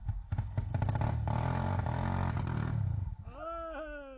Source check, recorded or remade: recorded